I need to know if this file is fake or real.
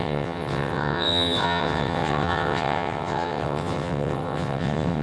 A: fake